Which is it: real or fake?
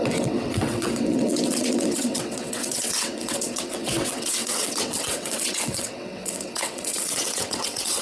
fake